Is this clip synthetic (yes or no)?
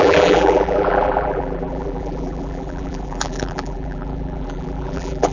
yes